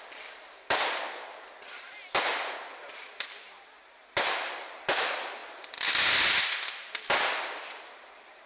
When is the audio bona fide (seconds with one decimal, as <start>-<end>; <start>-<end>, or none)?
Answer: 0.0-8.5